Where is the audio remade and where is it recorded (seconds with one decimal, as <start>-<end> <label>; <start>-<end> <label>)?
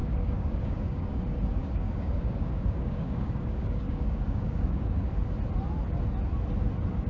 0.0-1.2 remade; 1.2-1.6 recorded; 1.6-5.1 remade; 5.1-7.1 recorded